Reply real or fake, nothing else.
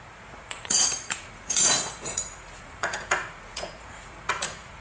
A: fake